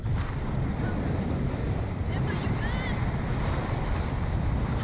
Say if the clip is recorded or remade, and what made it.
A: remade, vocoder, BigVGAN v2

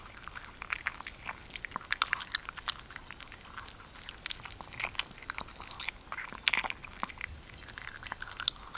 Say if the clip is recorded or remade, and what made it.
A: recorded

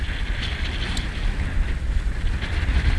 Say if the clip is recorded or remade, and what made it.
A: recorded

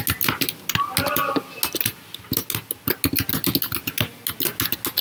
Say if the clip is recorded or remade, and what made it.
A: recorded